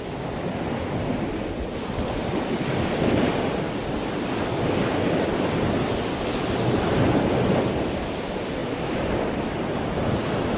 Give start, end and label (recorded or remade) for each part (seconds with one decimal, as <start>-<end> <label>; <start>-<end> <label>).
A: 0.0-10.6 recorded